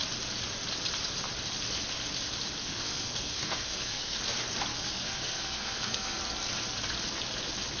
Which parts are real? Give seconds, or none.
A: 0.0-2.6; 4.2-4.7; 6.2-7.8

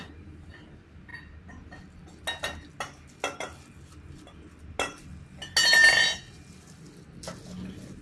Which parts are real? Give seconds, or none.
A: 0.0-8.0

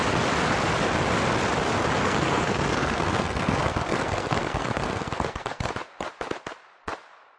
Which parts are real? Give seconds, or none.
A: 0.0-2.0; 5.7-7.4

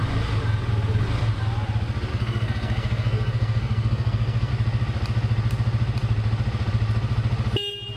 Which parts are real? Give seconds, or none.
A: 0.0-2.1; 4.5-8.0

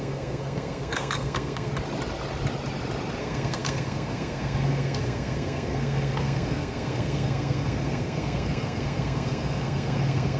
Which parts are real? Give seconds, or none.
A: 1.7-3.2